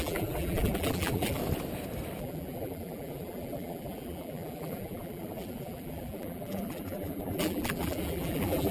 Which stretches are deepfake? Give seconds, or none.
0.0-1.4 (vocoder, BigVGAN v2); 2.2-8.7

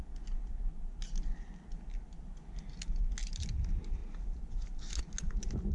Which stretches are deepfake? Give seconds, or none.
none

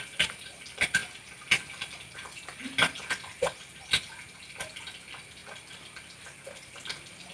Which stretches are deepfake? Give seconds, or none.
none

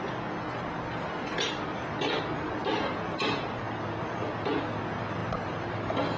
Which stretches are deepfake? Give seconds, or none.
5.2-5.8 (vocoder, BigVGAN v2)

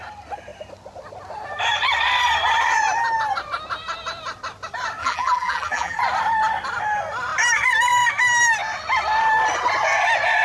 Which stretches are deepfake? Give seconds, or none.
5.0-6.0 (vocoder, BigVGAN v2)

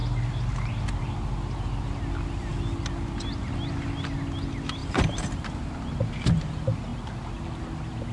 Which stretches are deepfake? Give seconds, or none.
4.8-5.4 (vocoder, BigVGAN v2)

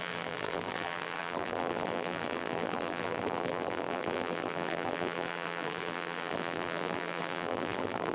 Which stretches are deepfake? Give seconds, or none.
0.0-8.1 (vocoder, BigVGAN v2)